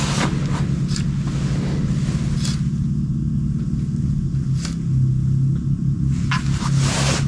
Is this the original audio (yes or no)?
yes